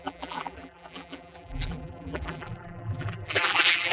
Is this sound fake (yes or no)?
yes